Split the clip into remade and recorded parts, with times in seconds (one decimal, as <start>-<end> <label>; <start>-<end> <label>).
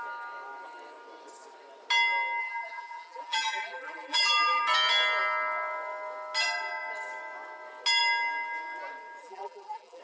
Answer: 0.0-2.4 recorded; 2.4-4.6 remade; 4.6-9.2 recorded; 9.2-10.0 remade